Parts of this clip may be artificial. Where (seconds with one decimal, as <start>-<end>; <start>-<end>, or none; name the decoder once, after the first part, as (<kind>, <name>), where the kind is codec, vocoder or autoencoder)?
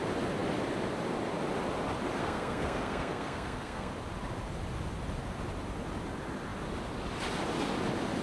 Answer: 2.2-3.9 (codec, SNAC)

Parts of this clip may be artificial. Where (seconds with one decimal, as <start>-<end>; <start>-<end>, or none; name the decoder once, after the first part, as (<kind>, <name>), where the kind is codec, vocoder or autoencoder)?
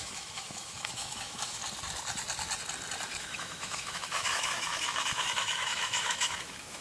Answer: 0.0-1.6 (autoencoder, DAC-VAE); 3.2-6.8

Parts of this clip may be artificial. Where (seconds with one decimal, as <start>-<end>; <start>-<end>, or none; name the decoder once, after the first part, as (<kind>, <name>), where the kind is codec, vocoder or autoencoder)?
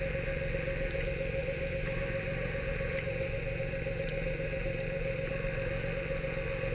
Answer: 1.4-5.3 (vocoder, BigVGAN v2)